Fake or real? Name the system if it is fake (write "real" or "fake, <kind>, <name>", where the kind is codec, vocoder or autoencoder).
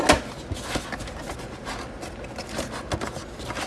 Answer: real